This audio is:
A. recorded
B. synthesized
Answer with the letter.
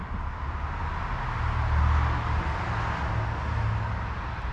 A